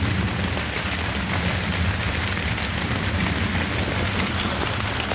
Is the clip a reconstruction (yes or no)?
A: no